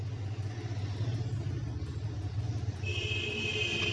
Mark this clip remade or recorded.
recorded